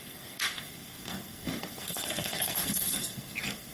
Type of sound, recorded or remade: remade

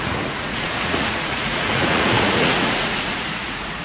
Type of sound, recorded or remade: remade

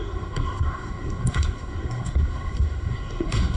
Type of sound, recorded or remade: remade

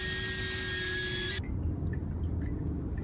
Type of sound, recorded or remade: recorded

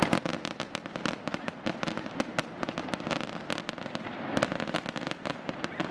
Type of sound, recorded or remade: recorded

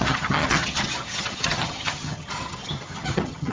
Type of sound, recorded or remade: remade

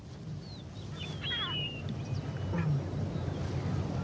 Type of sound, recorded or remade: recorded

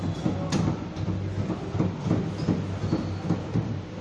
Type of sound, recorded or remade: recorded